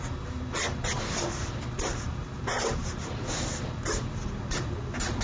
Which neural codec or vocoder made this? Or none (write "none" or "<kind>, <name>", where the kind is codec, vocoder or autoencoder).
none